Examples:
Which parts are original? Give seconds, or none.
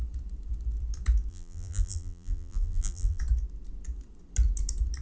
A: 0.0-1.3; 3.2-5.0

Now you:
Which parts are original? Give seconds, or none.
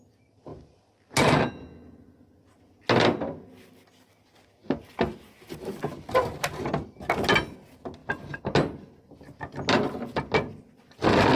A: 0.0-11.4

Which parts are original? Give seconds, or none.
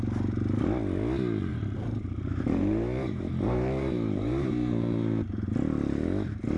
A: 0.0-1.5; 5.5-6.6